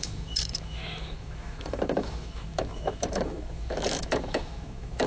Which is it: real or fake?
fake